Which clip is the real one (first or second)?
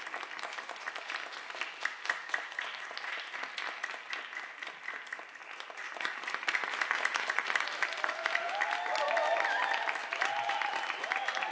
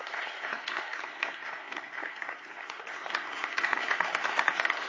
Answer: first